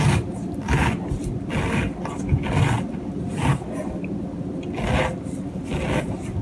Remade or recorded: recorded